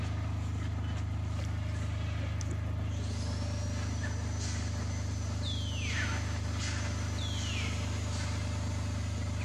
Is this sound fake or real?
real